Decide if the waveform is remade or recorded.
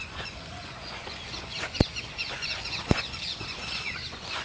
remade